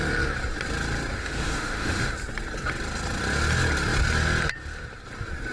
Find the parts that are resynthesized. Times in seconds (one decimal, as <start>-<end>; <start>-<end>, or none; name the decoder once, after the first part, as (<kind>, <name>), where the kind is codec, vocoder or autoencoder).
1.1-2.1 (autoencoder, DAC-VAE)